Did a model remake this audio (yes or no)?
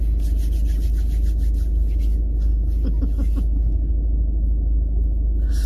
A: no